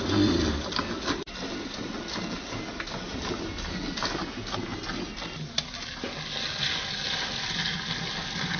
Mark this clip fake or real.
real